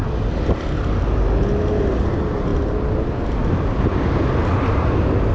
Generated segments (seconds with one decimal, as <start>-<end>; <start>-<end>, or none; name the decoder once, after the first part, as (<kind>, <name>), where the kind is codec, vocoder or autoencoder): none